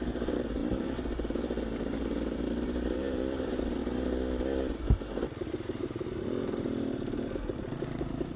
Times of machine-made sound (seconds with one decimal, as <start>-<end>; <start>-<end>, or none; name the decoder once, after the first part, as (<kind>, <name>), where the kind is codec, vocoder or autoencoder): 0.0-3.8 (vocoder, BigVGAN v2); 5.5-8.4